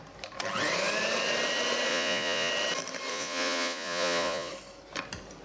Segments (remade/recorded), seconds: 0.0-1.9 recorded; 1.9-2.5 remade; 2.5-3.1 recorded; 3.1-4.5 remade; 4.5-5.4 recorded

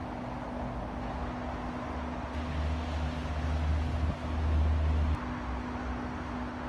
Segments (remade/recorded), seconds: 0.0-6.7 recorded

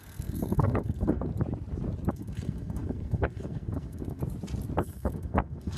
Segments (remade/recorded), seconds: 0.0-1.3 remade; 1.3-2.1 recorded; 2.1-4.2 remade; 4.2-4.8 recorded; 4.8-5.8 remade

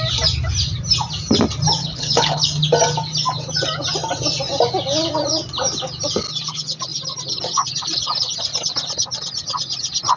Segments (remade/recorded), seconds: 0.0-1.8 recorded; 1.8-2.4 remade; 2.4-10.2 recorded

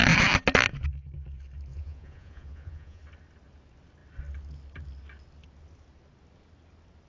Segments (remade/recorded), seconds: 0.0-1.7 recorded; 1.7-3.0 remade; 3.0-7.1 recorded

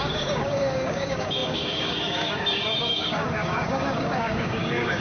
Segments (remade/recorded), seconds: 0.0-5.0 remade